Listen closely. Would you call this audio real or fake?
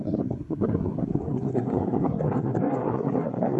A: fake